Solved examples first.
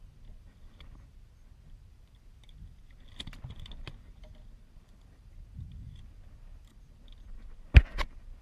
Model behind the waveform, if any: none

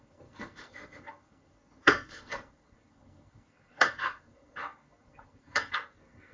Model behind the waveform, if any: codec, SNAC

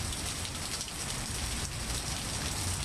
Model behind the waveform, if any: none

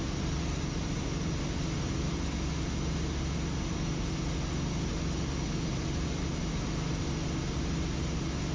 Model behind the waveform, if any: none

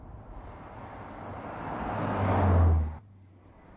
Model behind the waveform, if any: none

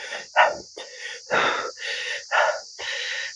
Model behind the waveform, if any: none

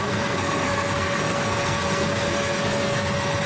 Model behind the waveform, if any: codec, SNAC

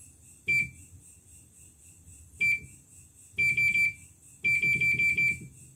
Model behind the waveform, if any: none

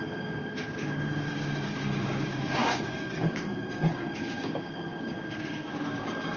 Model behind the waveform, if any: codec, DAC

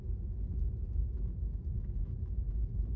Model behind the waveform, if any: none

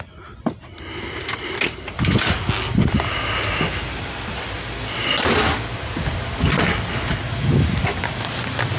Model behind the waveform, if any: none